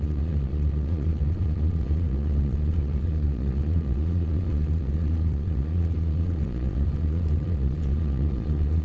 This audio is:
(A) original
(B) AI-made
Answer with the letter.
B